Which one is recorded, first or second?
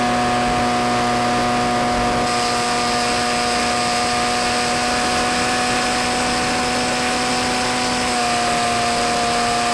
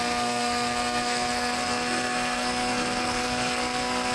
first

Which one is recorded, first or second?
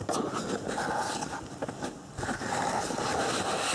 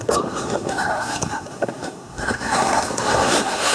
first